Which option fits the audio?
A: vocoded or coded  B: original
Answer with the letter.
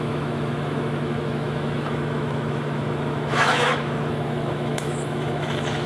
A